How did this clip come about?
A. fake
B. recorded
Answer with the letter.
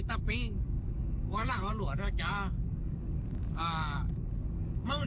A